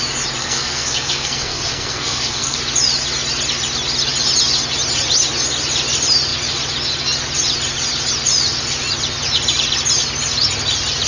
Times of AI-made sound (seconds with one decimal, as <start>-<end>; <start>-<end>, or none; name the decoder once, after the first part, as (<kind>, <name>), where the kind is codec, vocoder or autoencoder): 0.4-2.6 (codec, SNAC)